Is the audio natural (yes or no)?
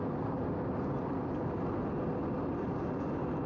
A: yes